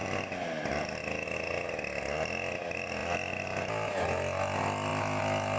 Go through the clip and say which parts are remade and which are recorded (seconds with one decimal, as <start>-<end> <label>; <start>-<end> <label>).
0.0-5.6 recorded